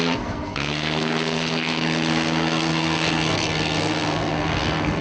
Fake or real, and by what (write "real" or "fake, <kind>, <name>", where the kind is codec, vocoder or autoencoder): fake, codec, SNAC